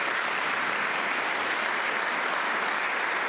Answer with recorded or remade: recorded